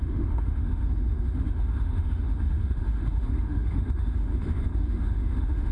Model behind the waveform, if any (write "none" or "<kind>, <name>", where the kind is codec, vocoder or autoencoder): autoencoder, DAC-VAE